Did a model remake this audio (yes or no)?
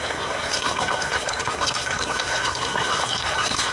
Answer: yes